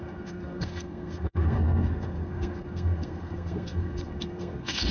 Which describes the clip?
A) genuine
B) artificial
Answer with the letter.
B